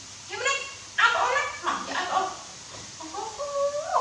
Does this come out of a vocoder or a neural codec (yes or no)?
no